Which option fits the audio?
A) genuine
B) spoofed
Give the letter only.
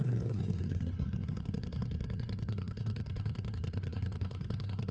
B